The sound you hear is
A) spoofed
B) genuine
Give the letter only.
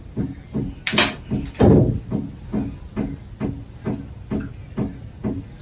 B